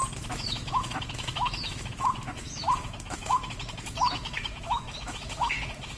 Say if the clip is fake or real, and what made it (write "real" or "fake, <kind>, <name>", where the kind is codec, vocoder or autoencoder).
fake, autoencoder, DAC-VAE